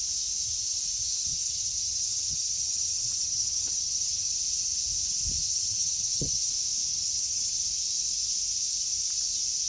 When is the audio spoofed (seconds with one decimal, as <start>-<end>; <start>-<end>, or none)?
1.3-4.3; 5.4-6.5; 6.9-7.6